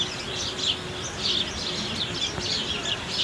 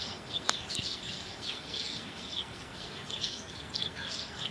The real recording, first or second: first